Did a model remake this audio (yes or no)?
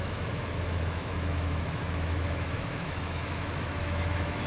yes